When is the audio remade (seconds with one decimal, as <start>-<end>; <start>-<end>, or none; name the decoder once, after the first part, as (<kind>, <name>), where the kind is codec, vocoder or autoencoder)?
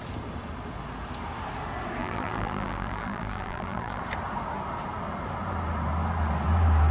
2.0-4.0 (vocoder, BigVGAN v2)